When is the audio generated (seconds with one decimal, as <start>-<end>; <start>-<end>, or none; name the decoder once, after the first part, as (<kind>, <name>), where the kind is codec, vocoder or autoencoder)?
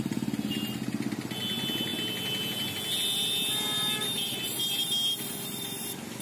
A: none